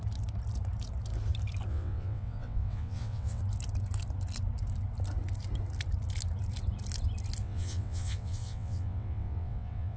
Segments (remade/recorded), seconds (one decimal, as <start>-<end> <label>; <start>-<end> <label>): 0.0-1.7 recorded; 1.7-3.4 remade; 3.4-7.4 recorded; 7.4-10.0 remade